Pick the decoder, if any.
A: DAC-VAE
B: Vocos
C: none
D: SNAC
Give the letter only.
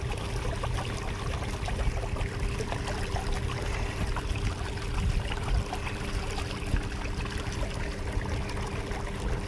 C